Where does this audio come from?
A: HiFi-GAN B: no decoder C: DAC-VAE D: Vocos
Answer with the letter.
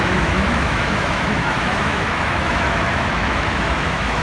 C